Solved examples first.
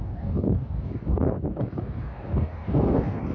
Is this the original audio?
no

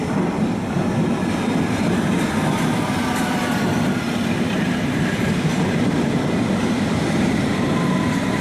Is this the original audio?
no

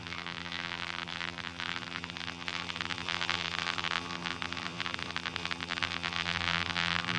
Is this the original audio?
no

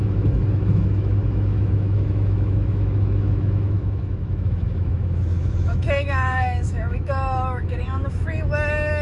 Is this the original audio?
no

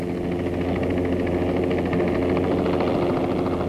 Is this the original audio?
yes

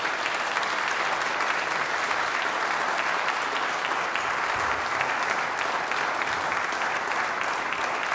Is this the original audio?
yes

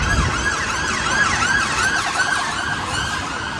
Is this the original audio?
yes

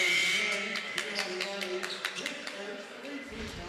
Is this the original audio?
no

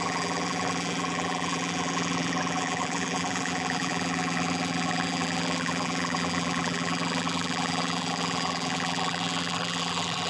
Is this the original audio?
no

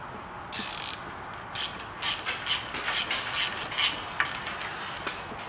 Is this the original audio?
yes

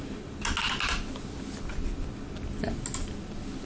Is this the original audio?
yes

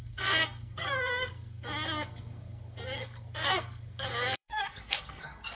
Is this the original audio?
no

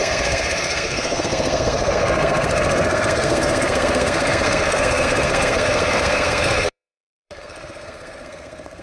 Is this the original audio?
no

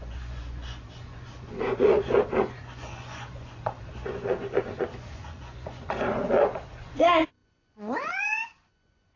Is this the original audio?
no